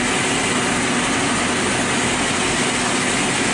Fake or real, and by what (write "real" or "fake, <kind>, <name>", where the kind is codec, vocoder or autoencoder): real